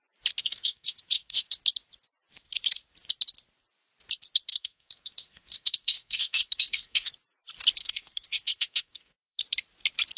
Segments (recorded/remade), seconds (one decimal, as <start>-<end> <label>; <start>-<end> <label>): 0.0-0.4 recorded; 0.4-1.6 remade; 1.6-4.5 recorded; 4.5-7.1 remade; 7.1-7.8 recorded; 7.8-9.4 remade; 9.4-10.2 recorded